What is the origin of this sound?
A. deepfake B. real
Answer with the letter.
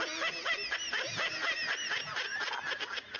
B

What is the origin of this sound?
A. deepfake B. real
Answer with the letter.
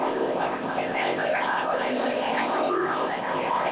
A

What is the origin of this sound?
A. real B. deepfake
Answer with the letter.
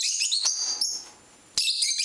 A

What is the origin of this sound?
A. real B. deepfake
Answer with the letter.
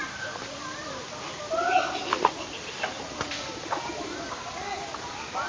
A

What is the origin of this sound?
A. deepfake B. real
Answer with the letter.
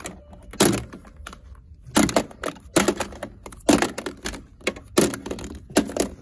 B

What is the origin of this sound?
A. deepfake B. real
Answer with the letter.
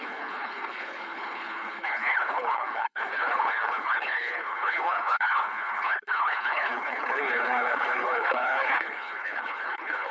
A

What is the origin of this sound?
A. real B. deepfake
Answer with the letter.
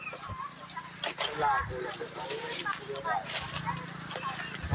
A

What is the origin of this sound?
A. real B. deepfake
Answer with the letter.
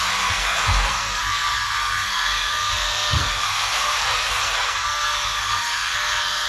B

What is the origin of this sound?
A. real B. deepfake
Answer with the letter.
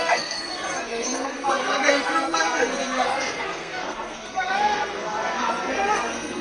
B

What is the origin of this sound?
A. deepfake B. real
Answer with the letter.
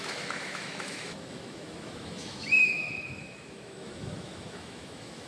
A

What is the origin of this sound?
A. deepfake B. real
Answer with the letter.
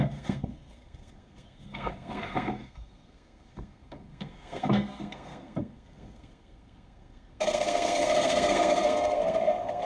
A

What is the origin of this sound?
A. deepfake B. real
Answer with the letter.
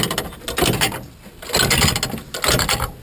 B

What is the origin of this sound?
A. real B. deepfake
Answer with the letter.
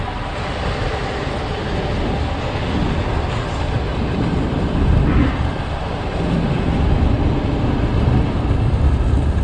A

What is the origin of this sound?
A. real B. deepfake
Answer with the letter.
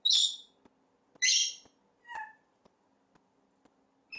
A